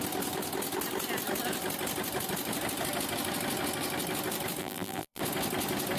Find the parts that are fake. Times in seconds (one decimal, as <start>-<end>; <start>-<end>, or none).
4.6-5.2